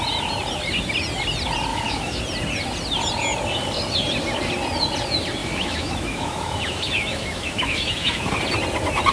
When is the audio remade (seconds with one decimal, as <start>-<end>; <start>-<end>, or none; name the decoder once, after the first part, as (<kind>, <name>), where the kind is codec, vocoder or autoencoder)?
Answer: 1.7-2.2 (autoencoder, DAC-VAE); 5.4-8.3